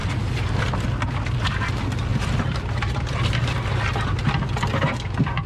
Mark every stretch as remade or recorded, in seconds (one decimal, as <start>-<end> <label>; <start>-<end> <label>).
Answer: 0.0-2.1 recorded; 2.1-4.0 remade; 4.0-5.5 recorded